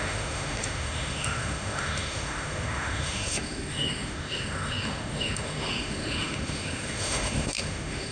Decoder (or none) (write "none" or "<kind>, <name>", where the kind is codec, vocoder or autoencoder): autoencoder, DAC-VAE